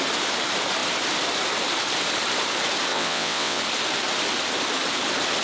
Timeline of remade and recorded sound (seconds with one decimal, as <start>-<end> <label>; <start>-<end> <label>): 0.0-2.9 recorded; 2.9-3.6 remade; 3.6-5.4 recorded